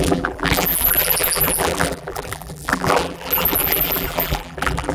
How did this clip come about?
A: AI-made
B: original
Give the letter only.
A